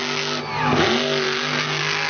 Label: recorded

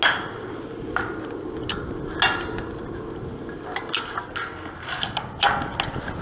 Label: recorded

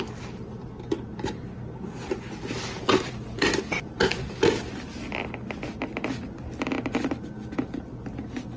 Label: recorded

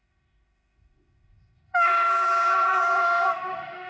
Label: remade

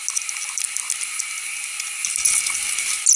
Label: recorded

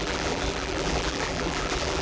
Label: remade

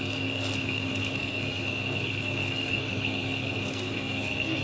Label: remade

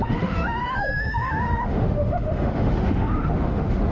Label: remade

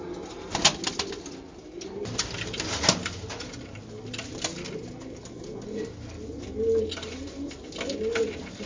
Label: recorded